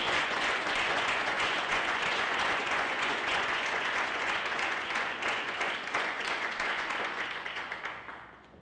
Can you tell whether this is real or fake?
fake